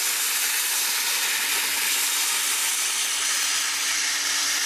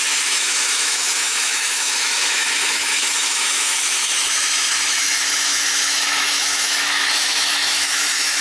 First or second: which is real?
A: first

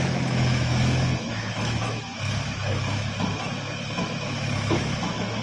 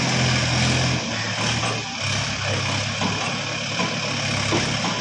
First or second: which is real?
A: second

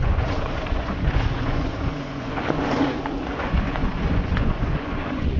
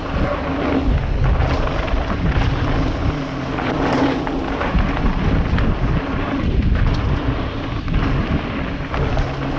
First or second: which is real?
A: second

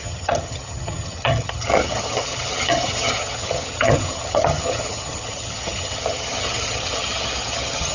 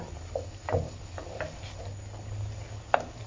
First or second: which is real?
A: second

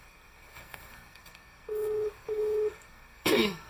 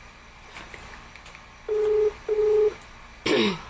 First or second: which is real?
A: second